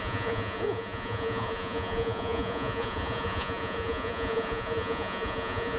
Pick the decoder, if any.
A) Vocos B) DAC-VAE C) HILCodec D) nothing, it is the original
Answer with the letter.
A